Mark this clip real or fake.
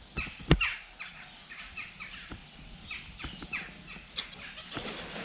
real